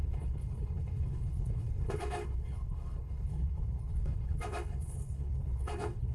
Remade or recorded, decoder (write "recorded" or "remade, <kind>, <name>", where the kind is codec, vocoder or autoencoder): remade, codec, HILCodec